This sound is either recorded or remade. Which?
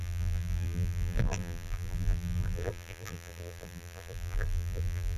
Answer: remade